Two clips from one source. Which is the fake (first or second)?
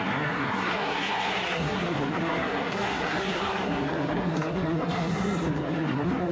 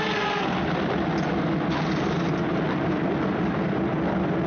first